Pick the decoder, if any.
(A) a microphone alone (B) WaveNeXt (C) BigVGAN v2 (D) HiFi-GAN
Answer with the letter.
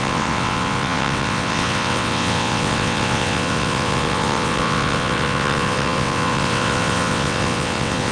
B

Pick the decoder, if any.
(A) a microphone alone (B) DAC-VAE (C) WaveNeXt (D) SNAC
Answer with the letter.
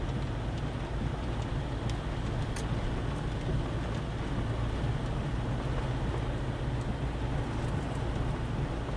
A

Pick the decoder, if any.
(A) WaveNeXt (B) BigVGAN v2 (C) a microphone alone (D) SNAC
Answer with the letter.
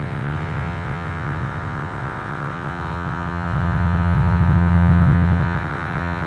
A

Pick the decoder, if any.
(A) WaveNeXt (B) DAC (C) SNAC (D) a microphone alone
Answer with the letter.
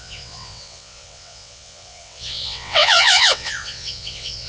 A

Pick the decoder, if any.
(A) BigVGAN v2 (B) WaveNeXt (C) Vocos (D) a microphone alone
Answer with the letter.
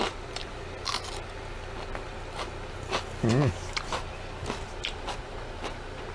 D